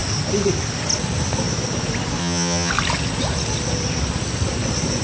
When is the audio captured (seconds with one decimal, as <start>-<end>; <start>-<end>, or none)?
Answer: 0.0-2.2; 2.7-5.0